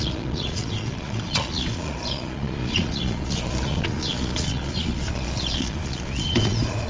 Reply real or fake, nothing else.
fake